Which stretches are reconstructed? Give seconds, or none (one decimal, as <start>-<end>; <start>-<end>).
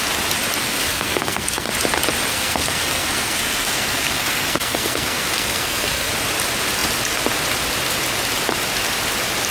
0.6-1.7; 2.3-6.1